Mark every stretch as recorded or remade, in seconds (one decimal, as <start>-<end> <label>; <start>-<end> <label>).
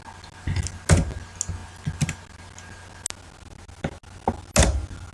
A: 0.0-5.1 recorded